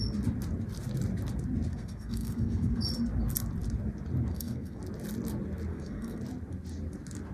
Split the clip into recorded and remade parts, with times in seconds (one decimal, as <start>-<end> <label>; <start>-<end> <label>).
0.0-1.7 recorded; 1.7-2.8 remade; 2.8-4.3 recorded; 4.3-4.8 remade; 4.8-5.7 recorded; 5.7-6.2 remade; 6.2-7.3 recorded